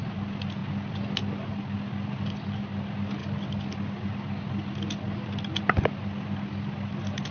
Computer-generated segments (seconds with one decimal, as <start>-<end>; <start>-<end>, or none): none